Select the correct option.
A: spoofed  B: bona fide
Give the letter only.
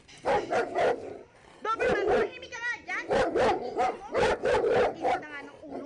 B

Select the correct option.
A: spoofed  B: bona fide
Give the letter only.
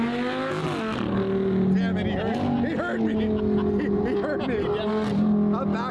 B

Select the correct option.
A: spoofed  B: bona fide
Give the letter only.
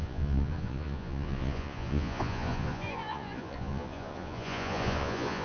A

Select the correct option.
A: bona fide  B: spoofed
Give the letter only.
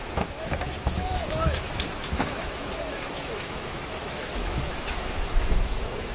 B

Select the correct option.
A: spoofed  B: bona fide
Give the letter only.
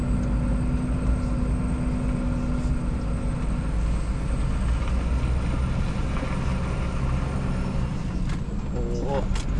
B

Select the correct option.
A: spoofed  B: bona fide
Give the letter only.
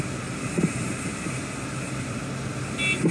B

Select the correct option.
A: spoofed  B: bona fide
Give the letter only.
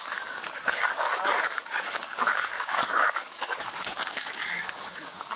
A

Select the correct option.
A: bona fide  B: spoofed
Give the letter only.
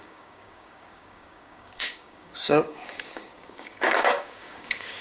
B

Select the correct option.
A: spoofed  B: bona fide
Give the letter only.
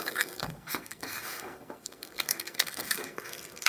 A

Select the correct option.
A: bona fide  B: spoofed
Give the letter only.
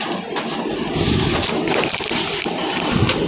A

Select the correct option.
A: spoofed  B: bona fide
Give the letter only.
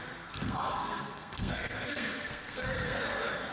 A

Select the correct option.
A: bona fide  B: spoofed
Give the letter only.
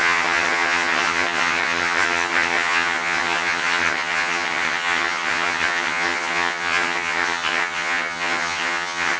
B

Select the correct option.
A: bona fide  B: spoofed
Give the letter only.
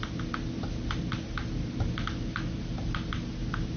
A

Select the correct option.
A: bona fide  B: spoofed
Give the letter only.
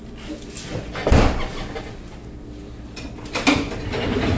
A